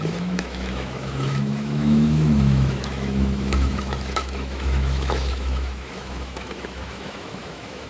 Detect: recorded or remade remade